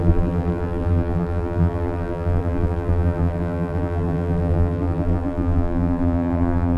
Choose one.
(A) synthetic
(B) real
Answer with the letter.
A